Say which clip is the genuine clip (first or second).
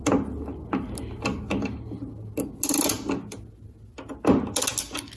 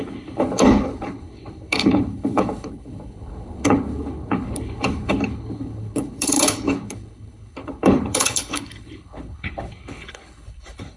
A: first